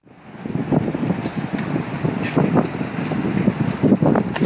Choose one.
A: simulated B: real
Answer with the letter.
B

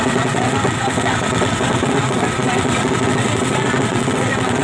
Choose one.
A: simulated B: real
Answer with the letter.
A